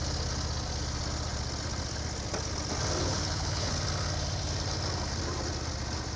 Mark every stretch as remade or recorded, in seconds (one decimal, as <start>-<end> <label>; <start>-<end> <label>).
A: 0.0-3.0 recorded; 3.0-3.7 remade; 3.7-6.2 recorded